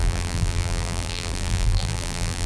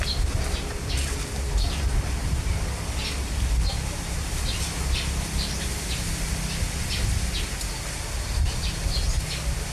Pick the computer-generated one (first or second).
first